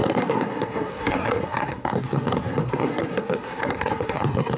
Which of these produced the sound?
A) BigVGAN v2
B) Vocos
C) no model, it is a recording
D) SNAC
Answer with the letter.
D